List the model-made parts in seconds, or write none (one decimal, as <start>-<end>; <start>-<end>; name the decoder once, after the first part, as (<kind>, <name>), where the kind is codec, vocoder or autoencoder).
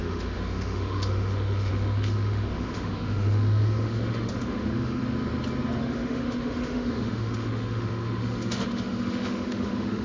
0.0-5.0 (autoencoder, DAC-VAE); 5.8-10.0